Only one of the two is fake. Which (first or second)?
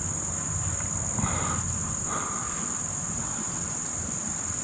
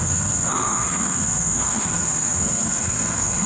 second